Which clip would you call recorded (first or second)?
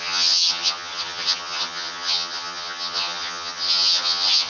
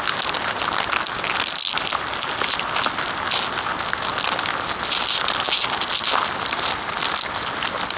second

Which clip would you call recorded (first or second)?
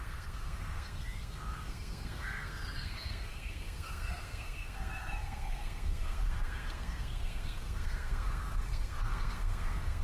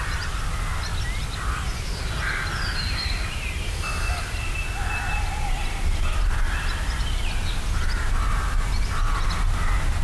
second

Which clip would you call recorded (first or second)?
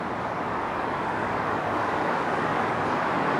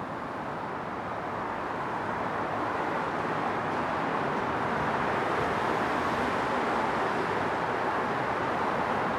second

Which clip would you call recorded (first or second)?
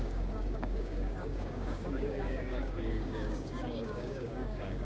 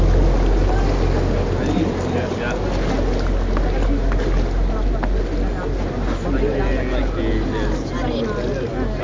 second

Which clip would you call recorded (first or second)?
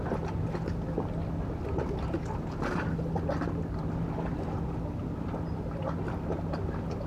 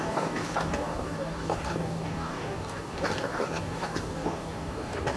first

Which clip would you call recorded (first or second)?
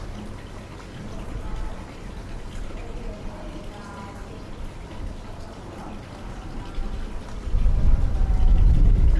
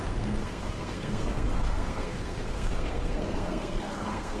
first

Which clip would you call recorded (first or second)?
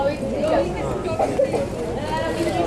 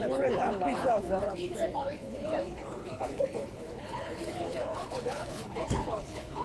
first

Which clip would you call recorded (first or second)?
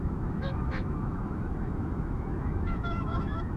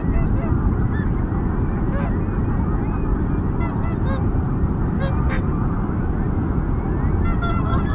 second